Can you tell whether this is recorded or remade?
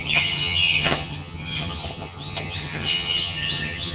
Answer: remade